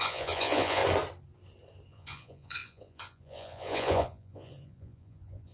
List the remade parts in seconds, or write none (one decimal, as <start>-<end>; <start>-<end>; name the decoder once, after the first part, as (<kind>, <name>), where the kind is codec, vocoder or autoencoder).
0.0-0.8 (vocoder, Vocos); 1.9-5.5